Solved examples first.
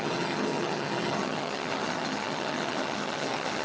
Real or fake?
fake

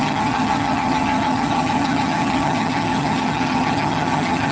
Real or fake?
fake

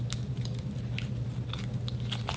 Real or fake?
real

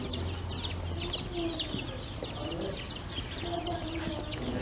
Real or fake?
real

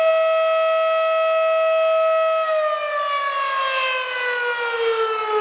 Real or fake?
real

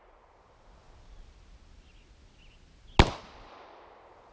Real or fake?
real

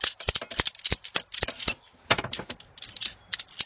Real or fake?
real